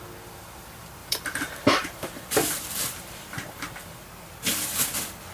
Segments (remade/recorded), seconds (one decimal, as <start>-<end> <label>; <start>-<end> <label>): 0.0-1.0 recorded; 1.0-3.6 remade; 3.6-5.3 recorded